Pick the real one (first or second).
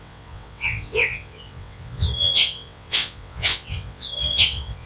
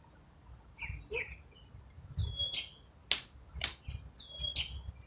second